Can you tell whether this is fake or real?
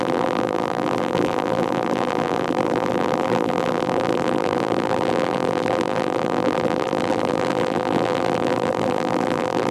fake